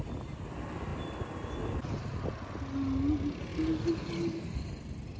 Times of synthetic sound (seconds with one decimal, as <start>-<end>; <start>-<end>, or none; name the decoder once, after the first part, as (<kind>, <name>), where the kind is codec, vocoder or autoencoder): none

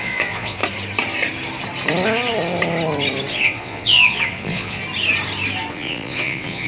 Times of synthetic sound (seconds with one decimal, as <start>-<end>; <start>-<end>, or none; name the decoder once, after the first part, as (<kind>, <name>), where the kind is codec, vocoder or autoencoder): 0.0-0.6 (vocoder, Vocos); 3.3-4.8; 5.7-6.7

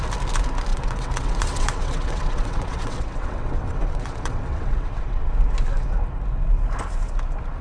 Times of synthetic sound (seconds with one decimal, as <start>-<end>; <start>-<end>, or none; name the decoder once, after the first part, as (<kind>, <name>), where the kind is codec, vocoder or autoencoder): 0.7-5.3 (vocoder, WaveNeXt)

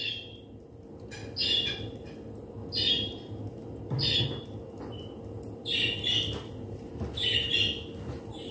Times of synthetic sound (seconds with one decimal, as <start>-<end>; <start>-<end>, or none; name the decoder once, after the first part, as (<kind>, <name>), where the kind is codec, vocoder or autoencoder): none

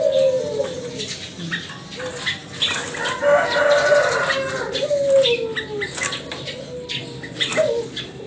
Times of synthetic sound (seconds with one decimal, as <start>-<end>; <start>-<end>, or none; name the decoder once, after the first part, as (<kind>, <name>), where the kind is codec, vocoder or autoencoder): none

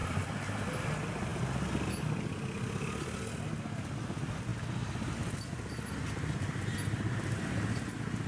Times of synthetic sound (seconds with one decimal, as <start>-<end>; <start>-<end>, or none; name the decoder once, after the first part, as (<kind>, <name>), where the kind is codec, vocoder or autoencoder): 0.0-0.8 (vocoder, BigVGAN v2)

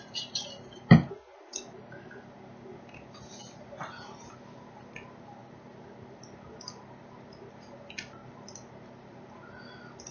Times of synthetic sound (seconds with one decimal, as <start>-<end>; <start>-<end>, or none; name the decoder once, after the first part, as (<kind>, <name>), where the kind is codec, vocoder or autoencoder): none